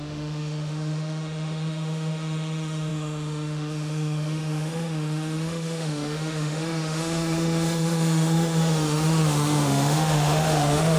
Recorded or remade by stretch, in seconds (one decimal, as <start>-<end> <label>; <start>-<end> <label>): 0.0-11.0 remade